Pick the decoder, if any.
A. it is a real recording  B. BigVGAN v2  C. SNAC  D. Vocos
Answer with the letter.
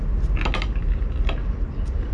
A